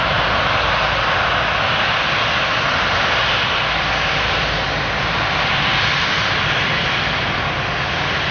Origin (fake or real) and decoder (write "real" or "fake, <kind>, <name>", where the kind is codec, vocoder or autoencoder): real